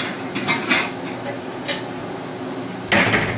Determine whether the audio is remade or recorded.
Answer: recorded